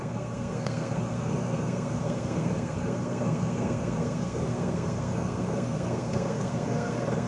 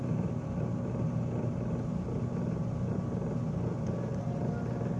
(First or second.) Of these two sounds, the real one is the second